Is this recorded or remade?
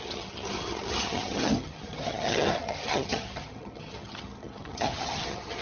remade